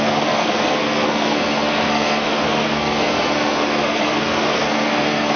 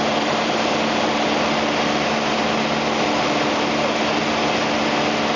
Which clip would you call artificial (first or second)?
first